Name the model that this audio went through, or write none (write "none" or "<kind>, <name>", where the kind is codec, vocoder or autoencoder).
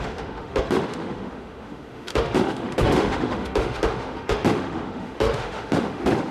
autoencoder, DAC-VAE